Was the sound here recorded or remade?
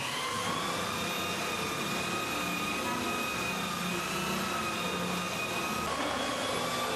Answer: recorded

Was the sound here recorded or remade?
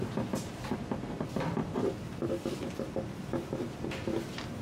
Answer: recorded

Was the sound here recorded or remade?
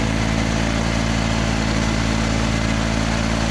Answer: recorded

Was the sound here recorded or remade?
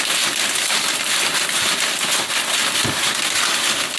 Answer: recorded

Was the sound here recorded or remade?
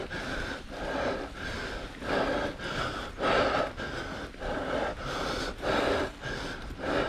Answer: recorded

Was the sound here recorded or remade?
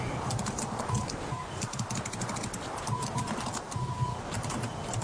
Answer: recorded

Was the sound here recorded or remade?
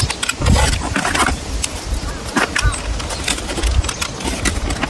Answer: recorded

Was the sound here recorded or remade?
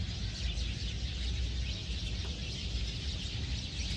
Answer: recorded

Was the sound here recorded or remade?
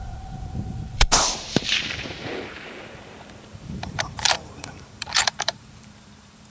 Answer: remade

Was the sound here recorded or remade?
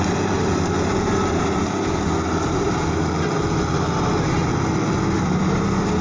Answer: remade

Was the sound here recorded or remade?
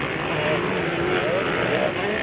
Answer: recorded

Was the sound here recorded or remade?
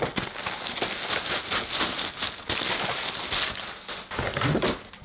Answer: recorded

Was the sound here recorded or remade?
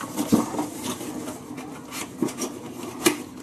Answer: recorded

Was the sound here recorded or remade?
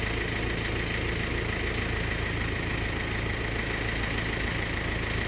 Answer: recorded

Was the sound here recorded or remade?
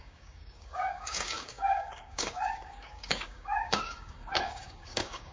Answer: remade